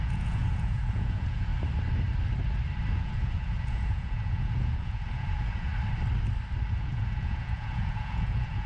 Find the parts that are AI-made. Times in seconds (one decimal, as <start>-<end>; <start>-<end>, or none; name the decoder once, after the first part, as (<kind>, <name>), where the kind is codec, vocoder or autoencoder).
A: 0.0-1.5 (vocoder, Vocos); 2.9-5.7; 6.8-8.7